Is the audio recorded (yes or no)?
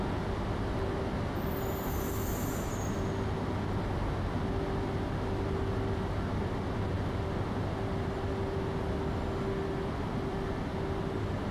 yes